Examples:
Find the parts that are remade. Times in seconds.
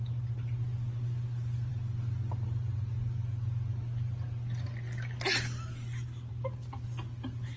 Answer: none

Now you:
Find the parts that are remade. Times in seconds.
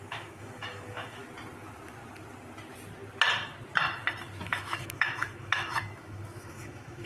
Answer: 0.0-1.2 (autoencoder, DAC-VAE); 4.4-7.1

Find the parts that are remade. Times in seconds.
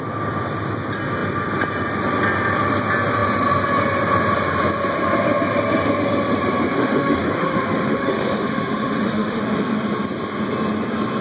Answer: 6.7-9.4 (autoencoder, DAC-VAE)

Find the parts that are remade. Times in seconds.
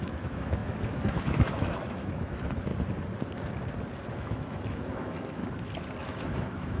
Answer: 0.0-2.7 (autoencoder, DAC-VAE); 4.1-5.4; 6.0-6.8